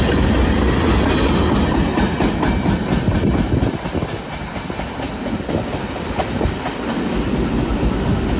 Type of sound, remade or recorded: recorded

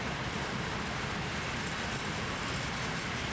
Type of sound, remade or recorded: recorded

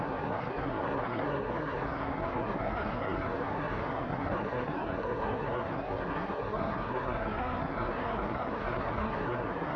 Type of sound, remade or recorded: remade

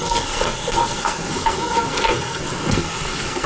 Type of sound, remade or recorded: remade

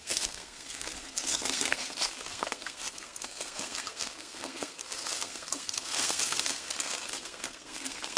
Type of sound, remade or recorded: remade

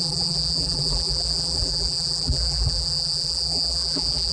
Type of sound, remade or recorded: remade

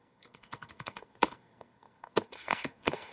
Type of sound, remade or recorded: remade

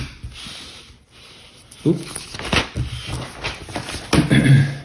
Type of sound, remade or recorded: recorded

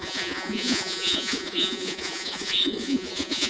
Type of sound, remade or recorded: remade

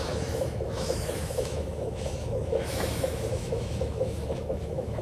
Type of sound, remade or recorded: remade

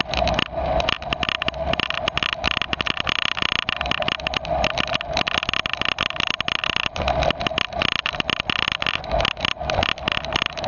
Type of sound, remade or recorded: recorded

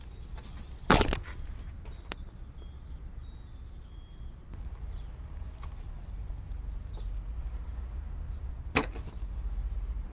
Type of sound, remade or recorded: recorded